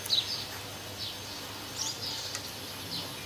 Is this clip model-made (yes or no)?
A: no